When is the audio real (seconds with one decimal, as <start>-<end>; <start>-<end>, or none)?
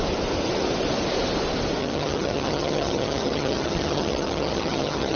0.0-1.8